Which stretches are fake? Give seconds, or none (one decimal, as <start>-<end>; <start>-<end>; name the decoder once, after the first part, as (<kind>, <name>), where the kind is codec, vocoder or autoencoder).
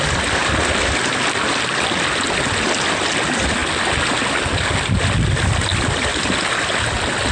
5.7-6.7 (vocoder, BigVGAN v2)